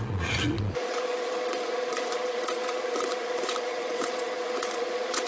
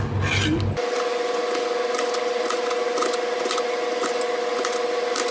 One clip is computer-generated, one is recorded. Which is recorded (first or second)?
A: second